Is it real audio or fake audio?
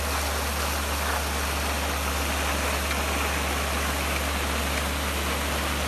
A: real